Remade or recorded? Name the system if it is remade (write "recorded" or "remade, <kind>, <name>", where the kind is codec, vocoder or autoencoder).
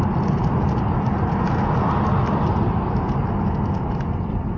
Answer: recorded